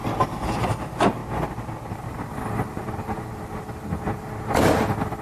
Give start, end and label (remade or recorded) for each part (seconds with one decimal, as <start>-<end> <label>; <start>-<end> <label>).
0.0-0.6 recorded; 0.6-1.2 remade; 1.2-1.9 recorded; 1.9-5.2 remade

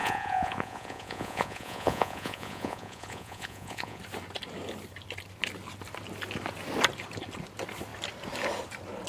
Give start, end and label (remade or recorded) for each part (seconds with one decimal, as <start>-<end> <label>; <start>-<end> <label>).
0.0-4.0 remade; 4.0-9.1 recorded

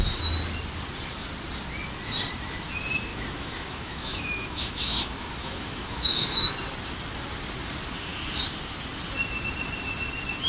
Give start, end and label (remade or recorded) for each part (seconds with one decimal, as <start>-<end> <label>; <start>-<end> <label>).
0.0-3.1 recorded; 3.1-6.5 remade; 6.5-10.5 recorded

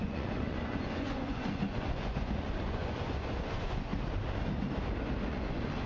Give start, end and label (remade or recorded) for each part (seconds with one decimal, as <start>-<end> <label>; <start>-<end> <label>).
0.0-3.9 remade; 3.9-5.3 recorded; 5.3-5.9 remade

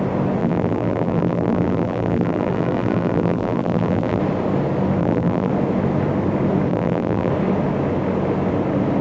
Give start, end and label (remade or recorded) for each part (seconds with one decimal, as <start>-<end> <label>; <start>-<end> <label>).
0.0-0.4 recorded; 0.4-4.2 remade; 4.2-5.0 recorded; 5.0-5.5 remade; 5.5-6.7 recorded; 6.7-7.3 remade; 7.3-9.0 recorded